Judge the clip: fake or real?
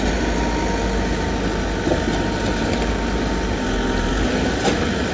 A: real